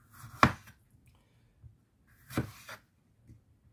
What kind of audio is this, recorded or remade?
recorded